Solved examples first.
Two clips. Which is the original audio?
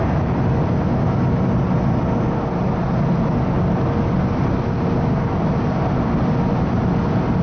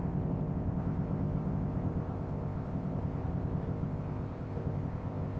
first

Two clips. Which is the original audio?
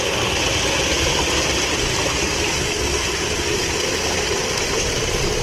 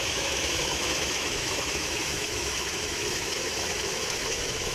first